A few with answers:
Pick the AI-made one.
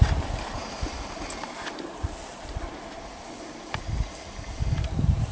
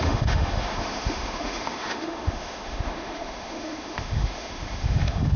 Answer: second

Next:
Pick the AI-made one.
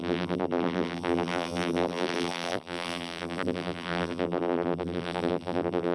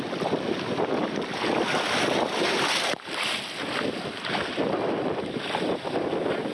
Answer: first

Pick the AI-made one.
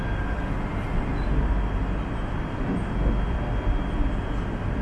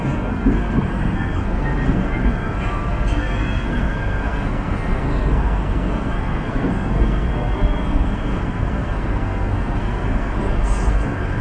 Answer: second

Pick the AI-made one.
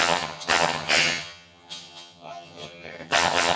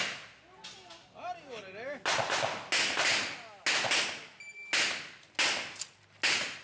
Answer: first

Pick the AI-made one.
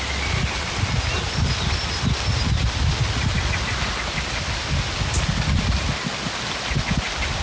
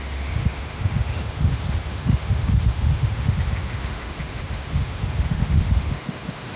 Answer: second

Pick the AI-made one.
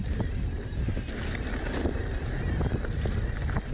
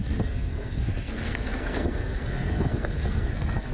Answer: second